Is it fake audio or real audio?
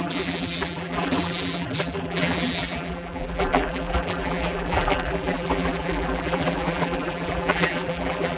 fake